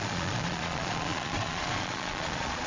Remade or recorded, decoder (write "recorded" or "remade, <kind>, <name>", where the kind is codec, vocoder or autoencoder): remade, vocoder, Vocos